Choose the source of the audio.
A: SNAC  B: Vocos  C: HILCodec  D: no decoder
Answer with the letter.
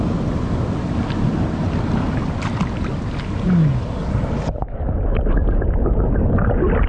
D